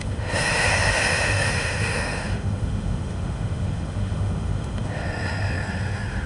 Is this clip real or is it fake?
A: fake